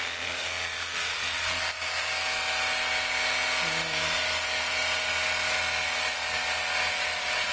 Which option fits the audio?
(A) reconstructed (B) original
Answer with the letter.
B